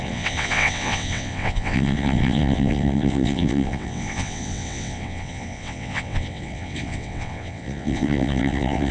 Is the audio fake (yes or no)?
yes